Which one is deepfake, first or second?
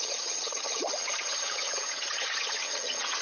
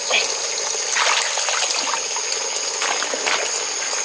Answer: first